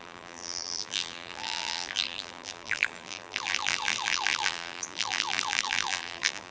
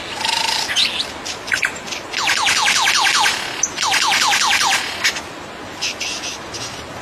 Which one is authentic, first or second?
second